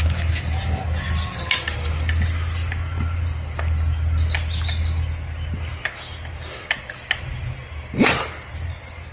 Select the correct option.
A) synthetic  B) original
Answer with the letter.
B